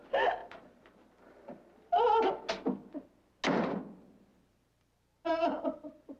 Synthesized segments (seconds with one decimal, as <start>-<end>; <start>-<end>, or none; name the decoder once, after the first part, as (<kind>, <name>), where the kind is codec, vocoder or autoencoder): 0.4-2.3 (vocoder, BigVGAN v2); 4.3-6.2